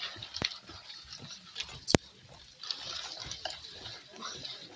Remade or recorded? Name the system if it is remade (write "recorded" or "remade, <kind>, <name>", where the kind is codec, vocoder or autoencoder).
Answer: recorded